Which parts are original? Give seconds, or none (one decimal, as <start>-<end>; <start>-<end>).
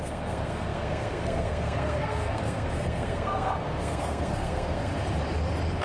4.9-5.8